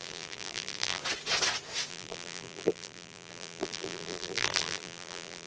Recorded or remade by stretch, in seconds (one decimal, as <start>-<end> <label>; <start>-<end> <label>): 0.0-1.0 remade; 1.0-1.9 recorded; 1.9-5.5 remade